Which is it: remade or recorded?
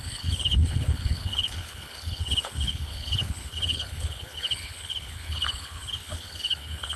remade